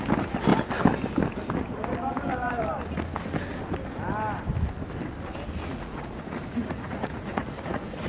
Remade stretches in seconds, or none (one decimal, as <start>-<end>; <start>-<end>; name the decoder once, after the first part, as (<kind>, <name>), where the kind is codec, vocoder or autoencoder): 5.6-8.1 (vocoder, Vocos)